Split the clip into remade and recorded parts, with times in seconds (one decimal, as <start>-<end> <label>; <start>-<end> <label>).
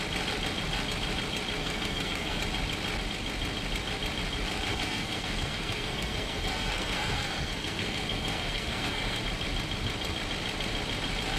0.0-1.6 recorded; 1.6-2.4 remade; 2.4-4.7 recorded; 4.7-9.2 remade; 9.2-11.4 recorded